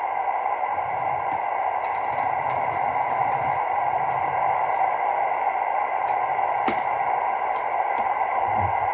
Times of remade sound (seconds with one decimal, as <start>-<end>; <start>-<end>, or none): 1.0-4.1; 5.1-8.9